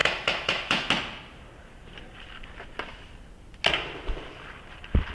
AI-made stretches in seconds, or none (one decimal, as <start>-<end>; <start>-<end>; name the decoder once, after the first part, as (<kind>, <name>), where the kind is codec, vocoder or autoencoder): 0.0-0.9 (autoencoder, DAC-VAE)